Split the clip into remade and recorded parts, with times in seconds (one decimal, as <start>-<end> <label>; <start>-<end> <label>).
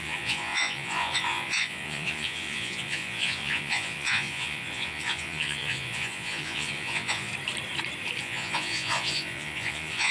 0.0-7.3 remade; 7.3-8.2 recorded; 8.2-10.1 remade